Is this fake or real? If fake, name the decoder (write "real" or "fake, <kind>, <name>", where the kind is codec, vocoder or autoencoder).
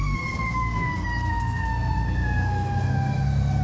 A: fake, codec, SNAC